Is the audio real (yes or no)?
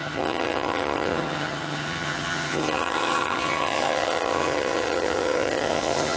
no